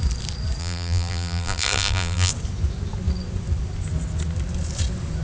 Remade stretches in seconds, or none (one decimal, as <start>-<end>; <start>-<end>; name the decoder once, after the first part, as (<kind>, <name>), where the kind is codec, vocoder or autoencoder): 0.6-2.3 (vocoder, BigVGAN v2)